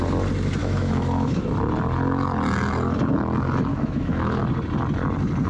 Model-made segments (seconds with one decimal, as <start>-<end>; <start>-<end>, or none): 0.6-1.4; 3.7-4.4